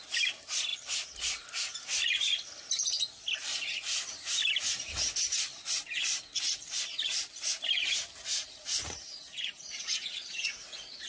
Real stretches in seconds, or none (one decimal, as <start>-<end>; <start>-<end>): 0.0-8.2